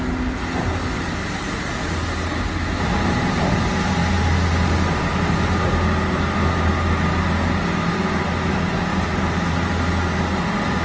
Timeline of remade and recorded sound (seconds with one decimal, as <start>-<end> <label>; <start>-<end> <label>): 0.0-10.8 recorded